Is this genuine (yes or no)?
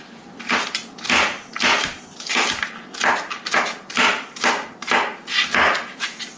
yes